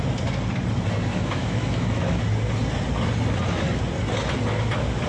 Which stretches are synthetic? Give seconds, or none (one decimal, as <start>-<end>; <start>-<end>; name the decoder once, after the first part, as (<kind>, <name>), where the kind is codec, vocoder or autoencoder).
1.1-2.2 (autoencoder, DAC-VAE)